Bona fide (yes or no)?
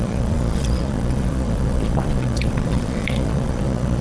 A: no